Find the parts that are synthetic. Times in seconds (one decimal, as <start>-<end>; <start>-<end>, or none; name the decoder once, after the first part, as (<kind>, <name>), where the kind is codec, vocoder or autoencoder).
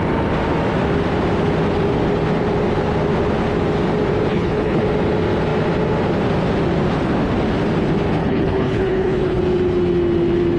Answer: 4.3-4.8 (codec, HILCodec); 8.2-9.4